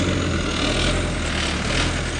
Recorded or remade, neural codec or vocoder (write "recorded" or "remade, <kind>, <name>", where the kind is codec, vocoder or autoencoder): recorded